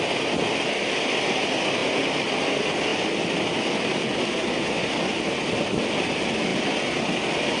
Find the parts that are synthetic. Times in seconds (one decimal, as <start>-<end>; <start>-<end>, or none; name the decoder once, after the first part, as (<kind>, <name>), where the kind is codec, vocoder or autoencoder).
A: none